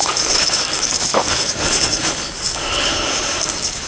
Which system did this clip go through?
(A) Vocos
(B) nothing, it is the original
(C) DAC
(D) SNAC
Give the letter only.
C